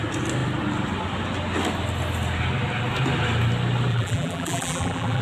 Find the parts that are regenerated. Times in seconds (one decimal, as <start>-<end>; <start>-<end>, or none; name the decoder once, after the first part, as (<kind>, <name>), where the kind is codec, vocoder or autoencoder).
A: 3.9-5.2 (vocoder, BigVGAN v2)